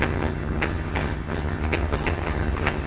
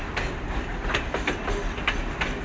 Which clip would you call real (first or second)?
second